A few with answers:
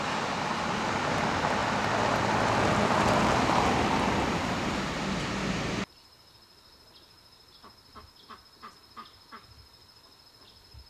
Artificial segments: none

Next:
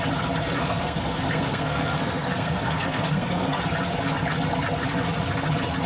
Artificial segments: 0.6-3.6 (codec, SNAC)

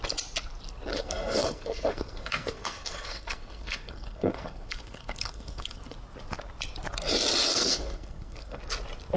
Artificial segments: 0.9-5.8 (codec, SNAC); 7.5-8.6